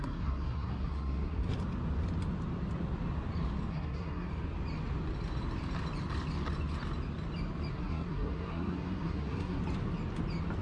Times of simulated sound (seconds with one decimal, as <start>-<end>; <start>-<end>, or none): 0.0-1.5; 3.7-4.3; 7.7-9.6